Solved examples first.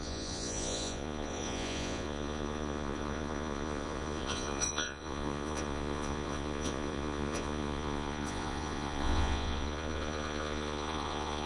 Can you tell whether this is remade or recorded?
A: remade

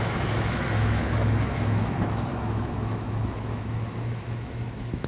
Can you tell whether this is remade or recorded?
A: remade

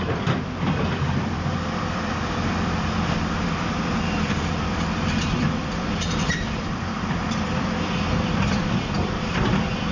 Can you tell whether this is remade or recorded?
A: remade